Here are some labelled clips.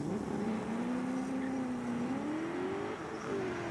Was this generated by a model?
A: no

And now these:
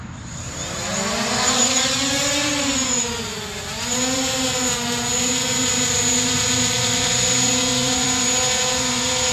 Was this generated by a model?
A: yes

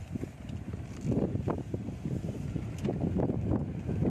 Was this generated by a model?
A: no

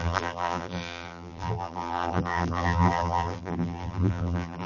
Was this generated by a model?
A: yes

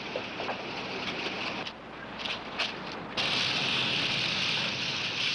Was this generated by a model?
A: no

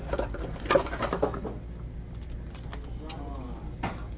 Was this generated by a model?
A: no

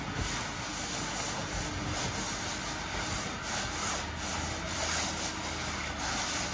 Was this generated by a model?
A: no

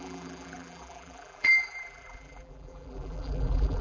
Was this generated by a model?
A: yes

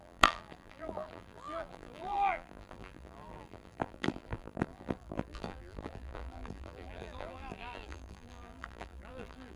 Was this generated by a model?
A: yes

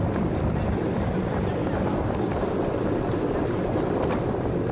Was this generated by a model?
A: no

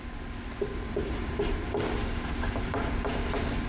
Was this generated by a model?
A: no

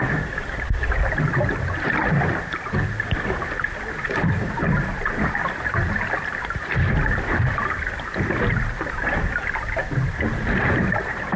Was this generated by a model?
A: yes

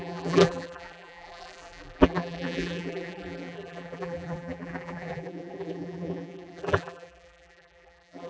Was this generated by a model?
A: yes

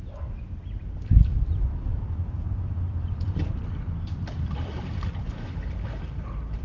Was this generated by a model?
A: yes